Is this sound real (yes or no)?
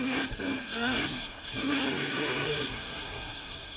no